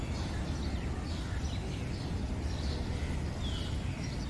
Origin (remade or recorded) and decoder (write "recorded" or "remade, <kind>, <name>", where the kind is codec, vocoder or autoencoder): recorded